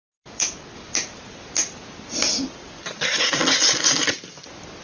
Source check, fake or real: real